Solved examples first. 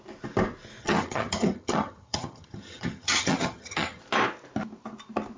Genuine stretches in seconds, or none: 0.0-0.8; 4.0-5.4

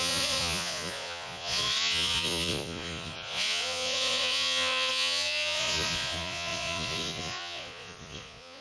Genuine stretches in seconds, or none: none

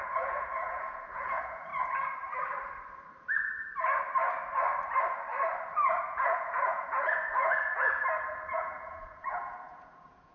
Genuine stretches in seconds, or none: 1.7-6.0

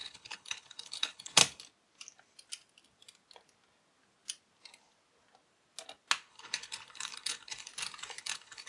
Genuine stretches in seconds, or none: 1.4-6.3; 7.7-8.2

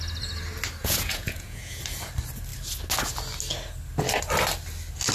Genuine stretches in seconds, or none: 0.0-0.8; 1.8-5.1

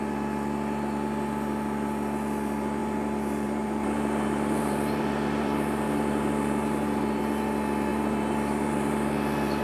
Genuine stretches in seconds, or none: 0.0-2.8; 7.2-7.9